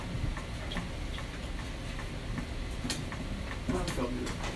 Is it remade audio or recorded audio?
recorded